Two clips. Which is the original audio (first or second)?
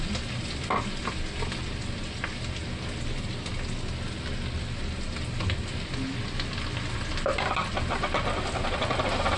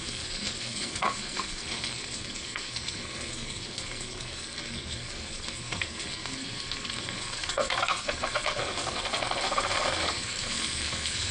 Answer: first